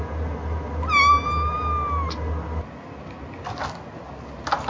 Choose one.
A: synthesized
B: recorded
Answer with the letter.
B